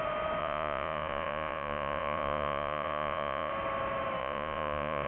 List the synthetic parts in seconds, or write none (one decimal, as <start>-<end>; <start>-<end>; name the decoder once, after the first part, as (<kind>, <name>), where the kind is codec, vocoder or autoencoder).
0.4-3.5 (vocoder, Vocos); 4.2-5.1